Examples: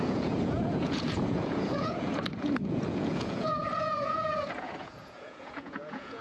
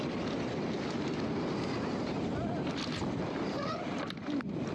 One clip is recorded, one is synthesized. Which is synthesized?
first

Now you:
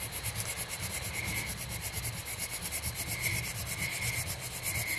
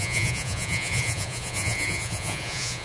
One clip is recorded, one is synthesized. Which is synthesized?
second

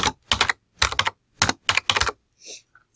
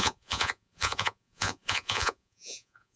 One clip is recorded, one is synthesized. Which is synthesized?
second